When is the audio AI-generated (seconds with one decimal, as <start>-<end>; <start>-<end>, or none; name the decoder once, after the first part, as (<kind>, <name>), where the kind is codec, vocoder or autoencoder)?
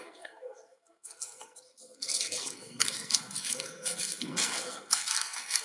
0.0-5.6 (codec, SNAC)